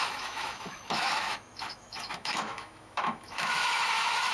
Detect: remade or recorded remade